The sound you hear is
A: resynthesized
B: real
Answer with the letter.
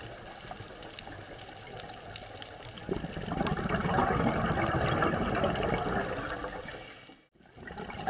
B